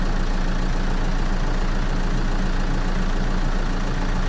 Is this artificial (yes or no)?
no